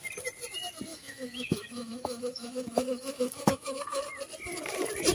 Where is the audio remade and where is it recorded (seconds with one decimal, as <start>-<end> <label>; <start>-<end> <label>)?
0.0-0.9 recorded; 0.9-4.0 remade; 4.0-5.1 recorded